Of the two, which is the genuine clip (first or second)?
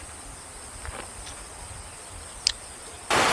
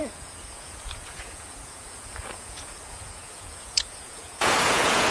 first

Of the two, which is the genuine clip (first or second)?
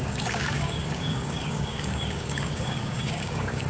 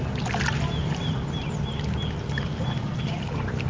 second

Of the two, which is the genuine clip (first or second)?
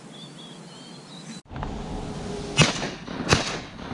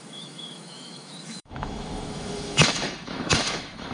first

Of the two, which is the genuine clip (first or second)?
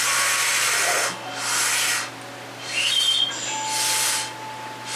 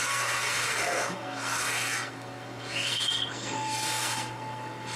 first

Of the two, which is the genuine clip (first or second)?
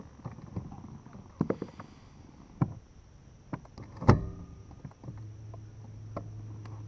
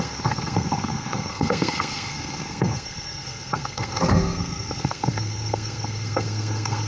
first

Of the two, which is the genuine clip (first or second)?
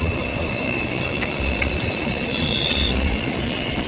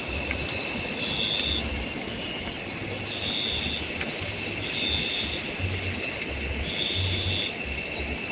second